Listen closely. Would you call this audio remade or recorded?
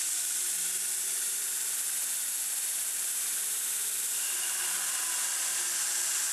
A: recorded